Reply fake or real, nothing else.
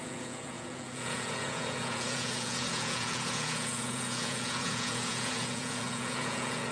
fake